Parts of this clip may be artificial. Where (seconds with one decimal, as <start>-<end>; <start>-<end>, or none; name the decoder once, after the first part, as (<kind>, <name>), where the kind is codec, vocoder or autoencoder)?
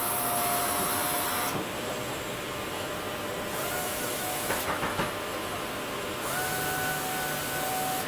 3.8-5.1 (autoencoder, DAC-VAE)